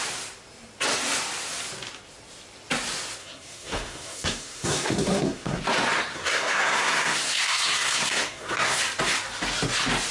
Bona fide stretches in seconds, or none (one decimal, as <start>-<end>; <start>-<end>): 0.0-3.2; 5.6-6.1; 8.8-10.1